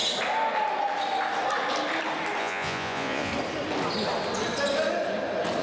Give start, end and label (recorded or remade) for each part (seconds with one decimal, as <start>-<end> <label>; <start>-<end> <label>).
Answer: 0.0-2.4 recorded; 2.4-3.3 remade; 3.3-5.6 recorded